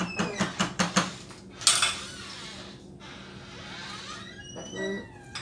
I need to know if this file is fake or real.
real